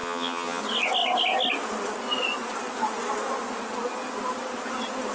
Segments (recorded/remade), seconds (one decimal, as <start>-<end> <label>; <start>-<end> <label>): 0.0-0.6 remade; 0.6-5.1 recorded